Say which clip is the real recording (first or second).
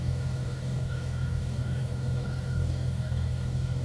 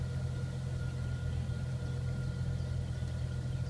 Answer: second